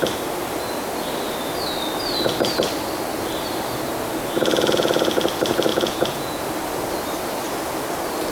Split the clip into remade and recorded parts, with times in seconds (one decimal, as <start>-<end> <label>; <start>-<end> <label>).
0.0-5.7 recorded; 5.7-6.4 remade; 6.4-8.3 recorded